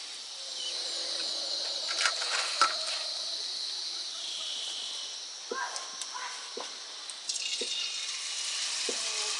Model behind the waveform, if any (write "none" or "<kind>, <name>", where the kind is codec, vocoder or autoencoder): none